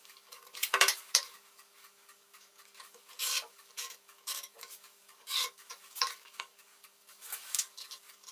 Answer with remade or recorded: remade